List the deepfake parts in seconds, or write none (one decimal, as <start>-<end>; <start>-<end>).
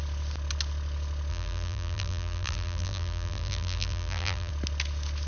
1.3-4.5